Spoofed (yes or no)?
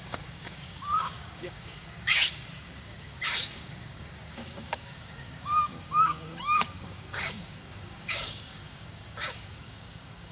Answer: yes